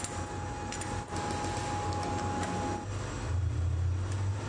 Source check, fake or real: real